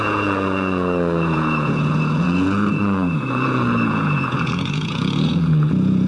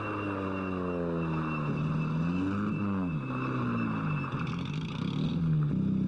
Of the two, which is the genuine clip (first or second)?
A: second